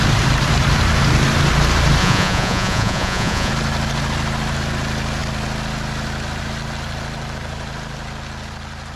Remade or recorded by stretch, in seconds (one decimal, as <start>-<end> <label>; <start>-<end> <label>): 0.0-2.0 recorded; 2.0-3.5 remade; 3.5-9.0 recorded